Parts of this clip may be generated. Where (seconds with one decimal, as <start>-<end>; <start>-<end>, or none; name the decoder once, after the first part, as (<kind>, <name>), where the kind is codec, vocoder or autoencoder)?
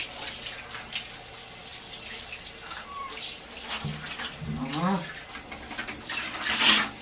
none